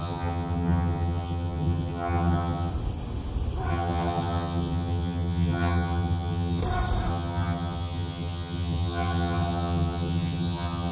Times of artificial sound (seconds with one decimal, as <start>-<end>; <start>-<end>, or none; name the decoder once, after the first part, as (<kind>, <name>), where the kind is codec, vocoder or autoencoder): 0.0-2.7 (vocoder, HiFi-GAN); 3.7-6.6; 7.1-10.9